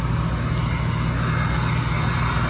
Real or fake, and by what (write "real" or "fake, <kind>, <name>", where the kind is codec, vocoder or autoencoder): real